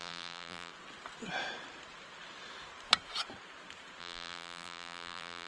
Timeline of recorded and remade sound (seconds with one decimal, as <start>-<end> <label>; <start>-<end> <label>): 0.0-0.7 remade; 0.7-4.0 recorded; 4.0-5.5 remade